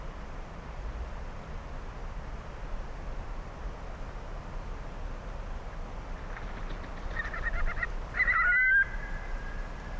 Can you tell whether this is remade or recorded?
recorded